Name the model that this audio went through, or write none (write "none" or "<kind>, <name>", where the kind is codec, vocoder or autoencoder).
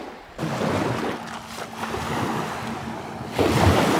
none